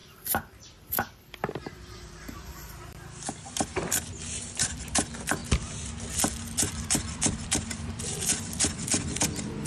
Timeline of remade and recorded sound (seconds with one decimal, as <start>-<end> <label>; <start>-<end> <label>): 0.0-5.4 remade; 5.4-6.1 recorded; 6.1-9.7 remade